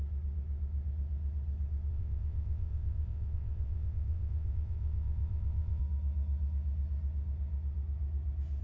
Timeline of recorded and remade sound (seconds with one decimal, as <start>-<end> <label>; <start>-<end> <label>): 0.0-1.9 recorded; 1.9-5.8 remade; 5.8-8.6 recorded